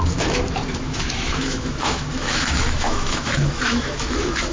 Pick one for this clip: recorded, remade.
remade